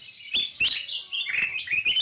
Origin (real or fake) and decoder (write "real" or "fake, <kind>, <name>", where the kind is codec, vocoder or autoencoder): real